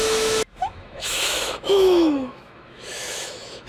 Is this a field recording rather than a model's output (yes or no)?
no